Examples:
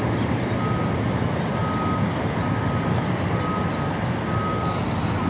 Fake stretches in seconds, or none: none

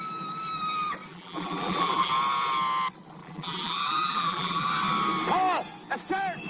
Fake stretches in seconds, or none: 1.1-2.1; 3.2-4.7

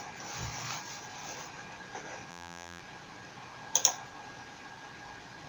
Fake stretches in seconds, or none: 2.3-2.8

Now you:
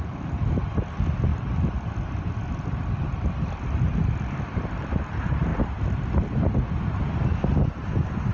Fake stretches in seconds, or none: 1.3-5.0

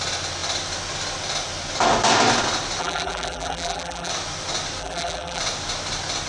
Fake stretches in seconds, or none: 2.8-4.1; 4.8-5.4

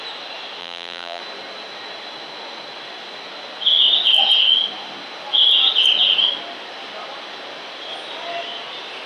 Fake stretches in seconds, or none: 0.6-1.2